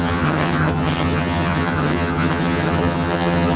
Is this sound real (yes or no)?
no